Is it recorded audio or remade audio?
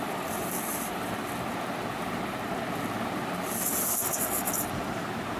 recorded